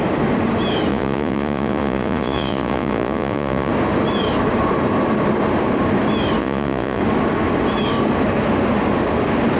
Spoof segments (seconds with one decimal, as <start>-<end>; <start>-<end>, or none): 0.9-3.7; 6.4-7.0